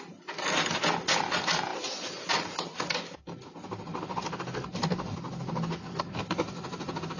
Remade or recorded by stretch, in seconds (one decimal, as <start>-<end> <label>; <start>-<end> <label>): 0.0-7.2 recorded